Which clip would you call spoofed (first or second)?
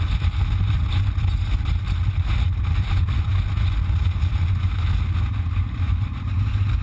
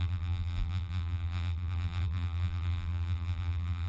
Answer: second